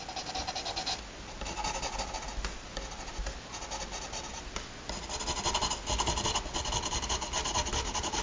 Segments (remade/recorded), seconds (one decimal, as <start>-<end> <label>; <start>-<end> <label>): 0.0-8.2 recorded